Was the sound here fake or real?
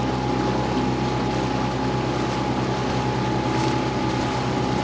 real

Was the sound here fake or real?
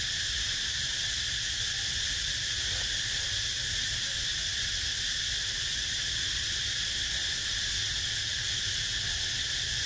real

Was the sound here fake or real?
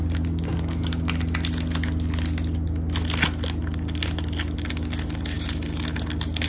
real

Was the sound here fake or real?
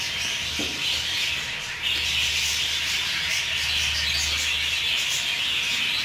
real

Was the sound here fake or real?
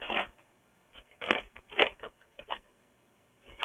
fake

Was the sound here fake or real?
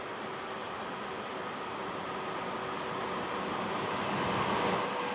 real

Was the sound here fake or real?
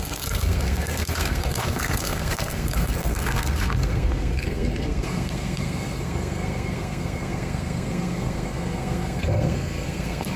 fake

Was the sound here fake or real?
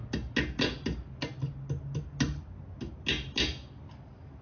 real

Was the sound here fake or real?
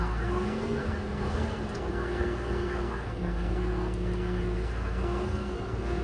fake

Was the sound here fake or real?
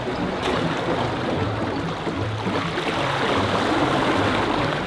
real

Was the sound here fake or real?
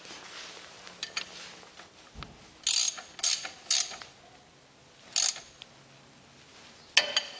real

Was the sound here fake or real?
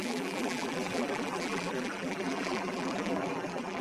fake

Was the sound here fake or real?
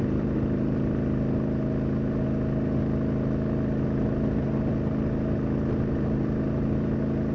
real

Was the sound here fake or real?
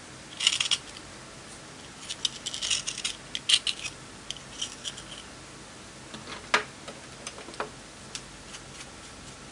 real